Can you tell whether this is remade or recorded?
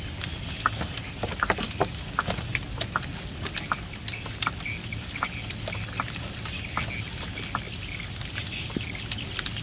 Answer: recorded